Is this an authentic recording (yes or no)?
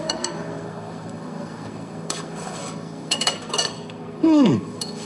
no